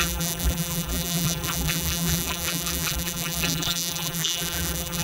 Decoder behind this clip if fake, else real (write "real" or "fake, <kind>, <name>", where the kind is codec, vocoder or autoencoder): fake, vocoder, BigVGAN v2